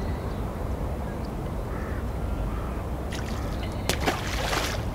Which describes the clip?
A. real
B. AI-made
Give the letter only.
A